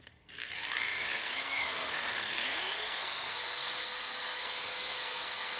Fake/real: fake